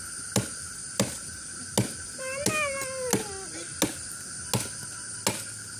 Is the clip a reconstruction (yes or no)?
no